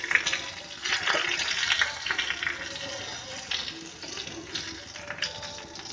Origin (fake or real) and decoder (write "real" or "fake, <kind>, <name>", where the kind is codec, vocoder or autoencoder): real